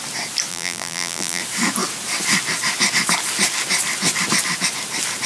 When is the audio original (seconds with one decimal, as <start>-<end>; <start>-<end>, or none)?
0.0-0.5; 1.4-5.3